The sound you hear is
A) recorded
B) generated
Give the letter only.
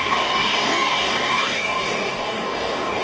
B